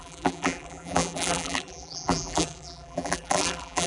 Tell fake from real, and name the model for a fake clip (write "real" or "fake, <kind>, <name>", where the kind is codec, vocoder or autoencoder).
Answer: fake, vocoder, BigVGAN v2